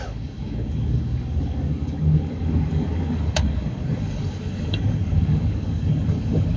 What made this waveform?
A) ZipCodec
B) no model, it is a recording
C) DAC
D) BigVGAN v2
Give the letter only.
C